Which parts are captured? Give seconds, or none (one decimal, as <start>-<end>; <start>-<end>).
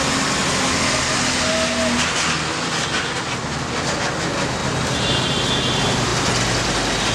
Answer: 0.0-4.6; 5.4-7.1